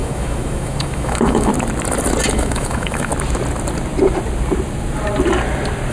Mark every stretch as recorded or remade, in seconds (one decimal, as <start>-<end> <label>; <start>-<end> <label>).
0.0-1.5 remade; 1.5-2.3 recorded; 2.3-3.1 remade; 3.1-5.9 recorded